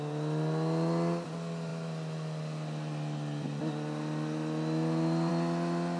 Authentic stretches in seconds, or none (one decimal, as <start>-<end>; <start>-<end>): 0.0-6.0